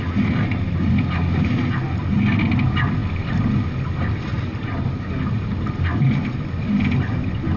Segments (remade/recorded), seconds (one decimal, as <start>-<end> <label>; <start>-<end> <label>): 0.0-7.6 recorded